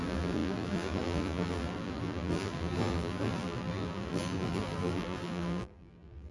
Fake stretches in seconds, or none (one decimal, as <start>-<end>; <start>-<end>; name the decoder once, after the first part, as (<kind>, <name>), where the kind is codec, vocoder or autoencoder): 0.0-6.3 (vocoder, BigVGAN v2)